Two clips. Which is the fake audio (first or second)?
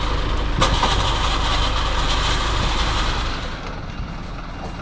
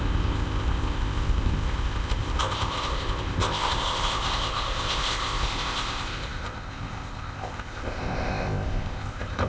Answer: second